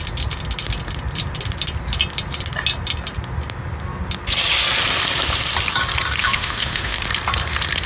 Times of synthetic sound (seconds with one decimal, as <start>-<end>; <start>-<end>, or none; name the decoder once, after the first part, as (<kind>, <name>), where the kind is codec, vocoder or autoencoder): 6.2-7.0 (autoencoder, DAC-VAE)